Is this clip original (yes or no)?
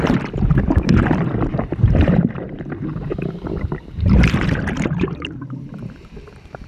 no